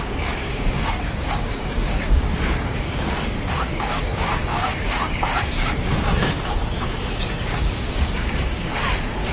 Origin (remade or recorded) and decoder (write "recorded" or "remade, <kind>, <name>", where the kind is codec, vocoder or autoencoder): remade, codec, DAC